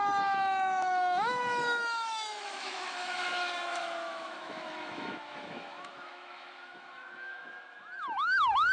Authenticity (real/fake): fake